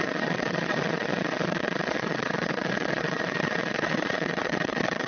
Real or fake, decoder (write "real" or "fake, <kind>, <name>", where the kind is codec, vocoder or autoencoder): fake, vocoder, Vocos